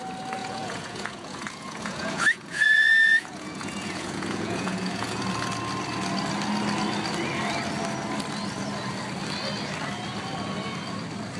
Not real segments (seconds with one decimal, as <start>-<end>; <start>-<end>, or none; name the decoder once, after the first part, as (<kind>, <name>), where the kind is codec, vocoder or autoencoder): 0.4-5.2 (vocoder, Vocos)